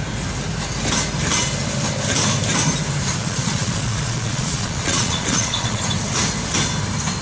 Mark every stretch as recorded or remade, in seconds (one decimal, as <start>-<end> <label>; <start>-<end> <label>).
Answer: 0.0-3.2 recorded; 3.2-5.8 remade; 5.8-7.2 recorded